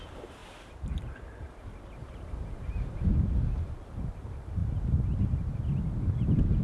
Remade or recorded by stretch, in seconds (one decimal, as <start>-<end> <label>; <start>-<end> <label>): 0.0-0.4 recorded; 0.4-1.5 remade; 1.5-2.0 recorded; 2.0-3.1 remade; 3.1-6.6 recorded